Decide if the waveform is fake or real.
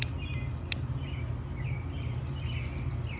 real